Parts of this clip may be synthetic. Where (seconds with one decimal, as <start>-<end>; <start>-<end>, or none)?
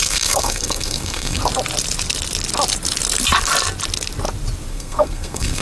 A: 0.0-1.4; 4.7-5.6